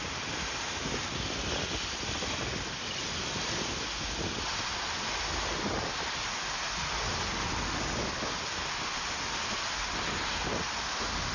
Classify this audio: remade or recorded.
recorded